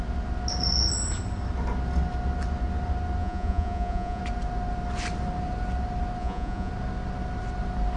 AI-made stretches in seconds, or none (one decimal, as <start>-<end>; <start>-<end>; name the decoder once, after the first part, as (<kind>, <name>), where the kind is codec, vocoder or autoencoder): 3.2-4.2 (vocoder, Vocos); 6.2-6.7